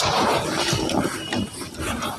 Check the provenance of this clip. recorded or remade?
recorded